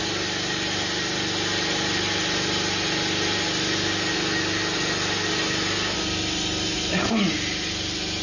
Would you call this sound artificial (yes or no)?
no